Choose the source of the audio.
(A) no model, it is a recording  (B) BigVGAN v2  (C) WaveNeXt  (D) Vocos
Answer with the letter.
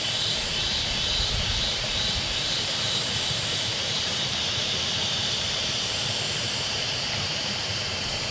B